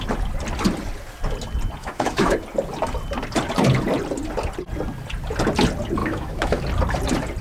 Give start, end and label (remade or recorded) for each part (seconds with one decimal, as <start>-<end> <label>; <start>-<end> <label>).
0.0-1.8 recorded; 1.8-2.3 remade; 2.3-6.0 recorded; 6.0-6.6 remade; 6.6-7.4 recorded